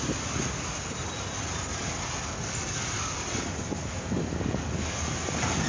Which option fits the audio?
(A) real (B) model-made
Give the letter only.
A